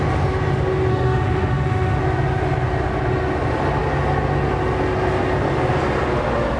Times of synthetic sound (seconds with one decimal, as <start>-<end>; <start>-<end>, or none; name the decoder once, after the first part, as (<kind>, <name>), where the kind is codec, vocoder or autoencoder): 0.9-2.0 (autoencoder, DAC-VAE)